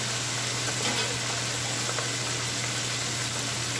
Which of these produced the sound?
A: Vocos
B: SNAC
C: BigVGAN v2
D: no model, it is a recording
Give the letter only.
D